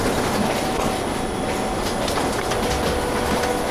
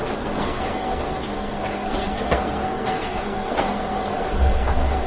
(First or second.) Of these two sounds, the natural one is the first